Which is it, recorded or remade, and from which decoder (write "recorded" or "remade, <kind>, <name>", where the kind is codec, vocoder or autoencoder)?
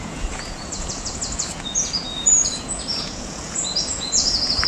remade, vocoder, Vocos